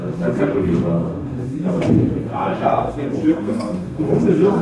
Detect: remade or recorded remade